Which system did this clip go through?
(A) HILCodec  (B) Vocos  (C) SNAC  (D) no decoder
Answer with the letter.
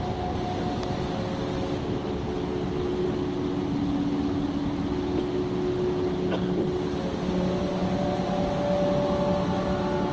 D